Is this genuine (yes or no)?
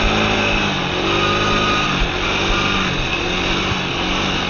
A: yes